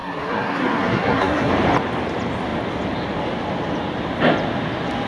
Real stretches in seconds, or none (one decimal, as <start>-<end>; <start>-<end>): 1.5-5.1